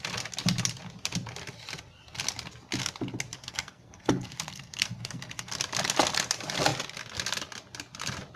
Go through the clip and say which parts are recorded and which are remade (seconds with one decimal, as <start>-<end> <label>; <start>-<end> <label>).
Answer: 0.0-3.4 recorded; 3.4-5.5 remade; 5.5-8.4 recorded